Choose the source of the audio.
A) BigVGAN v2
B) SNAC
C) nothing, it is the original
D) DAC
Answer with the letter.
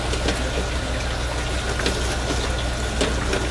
C